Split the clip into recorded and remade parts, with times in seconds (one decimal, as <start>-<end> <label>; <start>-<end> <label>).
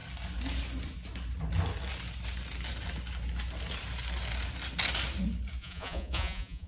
0.0-5.6 recorded; 5.6-6.7 remade